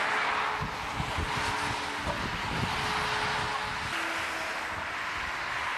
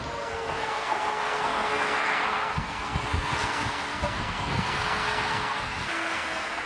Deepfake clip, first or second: second